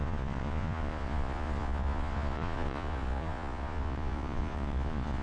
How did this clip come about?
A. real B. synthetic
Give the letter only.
B